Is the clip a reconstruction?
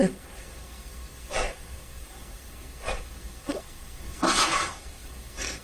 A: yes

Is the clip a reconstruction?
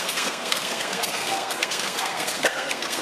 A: yes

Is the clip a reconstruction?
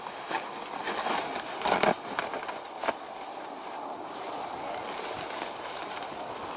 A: no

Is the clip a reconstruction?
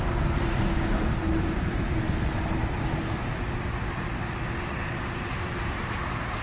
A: no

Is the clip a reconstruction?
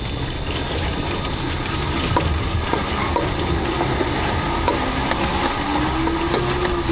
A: no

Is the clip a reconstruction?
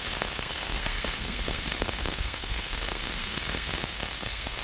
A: yes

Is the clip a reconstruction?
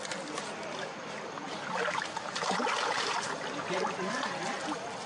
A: no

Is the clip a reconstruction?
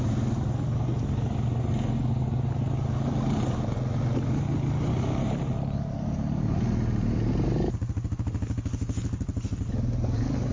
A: no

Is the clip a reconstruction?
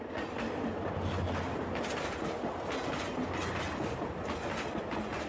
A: no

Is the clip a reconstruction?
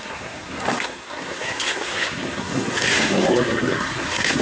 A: yes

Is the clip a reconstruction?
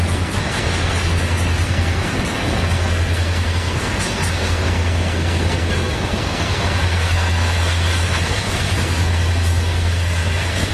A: yes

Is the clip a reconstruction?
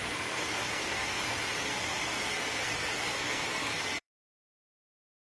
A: yes